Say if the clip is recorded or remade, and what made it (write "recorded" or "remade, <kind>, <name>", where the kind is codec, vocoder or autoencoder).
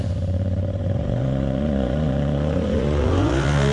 remade, vocoder, Vocos